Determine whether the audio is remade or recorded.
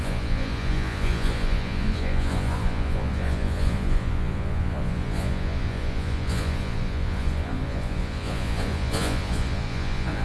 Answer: remade